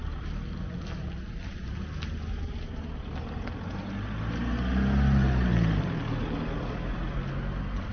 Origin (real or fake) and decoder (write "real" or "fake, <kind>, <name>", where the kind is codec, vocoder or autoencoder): real